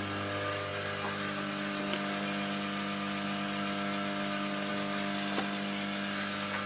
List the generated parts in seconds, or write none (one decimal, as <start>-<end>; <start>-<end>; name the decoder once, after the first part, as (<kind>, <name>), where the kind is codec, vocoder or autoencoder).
none